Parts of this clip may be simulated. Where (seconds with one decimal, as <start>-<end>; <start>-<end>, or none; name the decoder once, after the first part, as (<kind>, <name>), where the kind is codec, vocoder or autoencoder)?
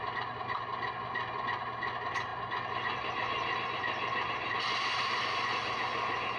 none